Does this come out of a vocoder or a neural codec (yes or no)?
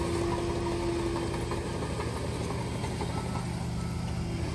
no